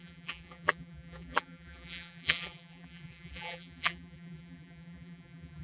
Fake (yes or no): yes